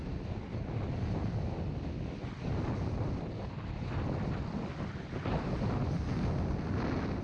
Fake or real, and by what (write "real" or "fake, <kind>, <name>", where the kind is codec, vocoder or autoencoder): real